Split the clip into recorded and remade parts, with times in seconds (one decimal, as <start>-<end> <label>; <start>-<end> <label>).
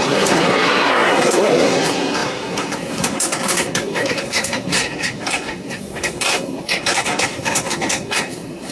0.0-8.7 remade